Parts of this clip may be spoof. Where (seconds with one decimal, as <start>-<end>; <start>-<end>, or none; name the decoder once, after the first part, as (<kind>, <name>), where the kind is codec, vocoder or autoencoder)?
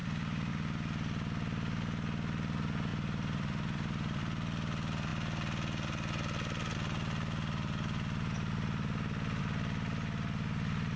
0.0-0.5 (vocoder, BigVGAN v2); 2.9-4.2